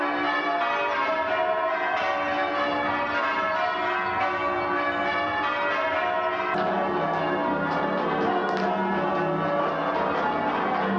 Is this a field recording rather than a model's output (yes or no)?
yes